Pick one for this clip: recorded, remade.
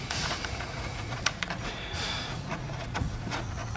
remade